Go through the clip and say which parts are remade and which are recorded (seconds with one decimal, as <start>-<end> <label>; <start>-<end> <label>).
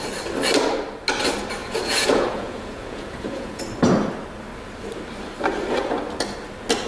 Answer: 0.0-1.6 recorded; 1.6-3.6 remade; 3.6-6.9 recorded